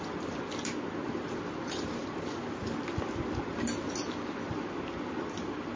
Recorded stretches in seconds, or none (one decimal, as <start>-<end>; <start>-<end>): 0.0-5.8